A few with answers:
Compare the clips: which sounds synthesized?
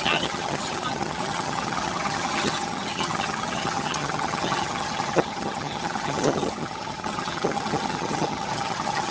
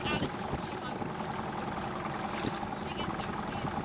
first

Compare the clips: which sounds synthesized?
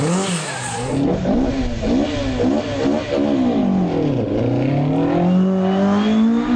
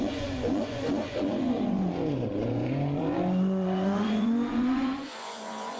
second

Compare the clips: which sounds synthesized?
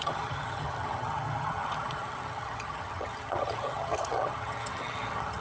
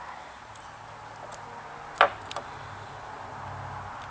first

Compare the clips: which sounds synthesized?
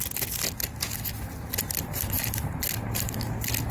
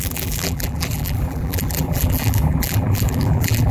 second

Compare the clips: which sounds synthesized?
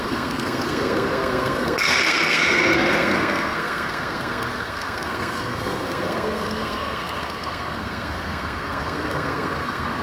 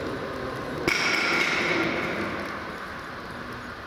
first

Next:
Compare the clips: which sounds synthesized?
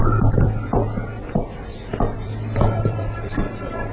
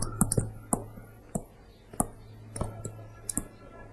first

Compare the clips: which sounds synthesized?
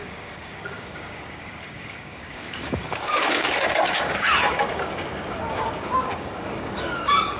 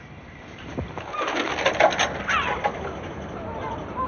first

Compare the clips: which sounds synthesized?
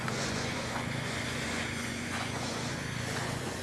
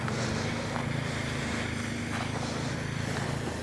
first